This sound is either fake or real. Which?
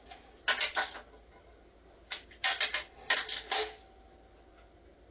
real